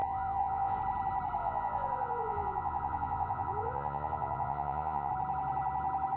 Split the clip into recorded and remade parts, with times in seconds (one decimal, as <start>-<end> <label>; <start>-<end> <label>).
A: 0.0-0.8 remade; 0.8-1.4 recorded; 1.4-5.1 remade; 5.1-6.2 recorded